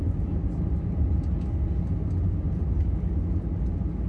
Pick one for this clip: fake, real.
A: real